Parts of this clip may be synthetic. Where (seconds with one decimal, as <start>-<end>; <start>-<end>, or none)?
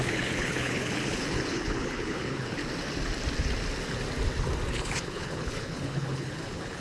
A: 0.0-2.6; 4.7-6.8